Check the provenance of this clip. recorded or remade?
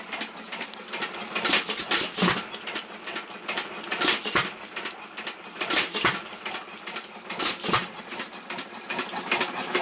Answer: recorded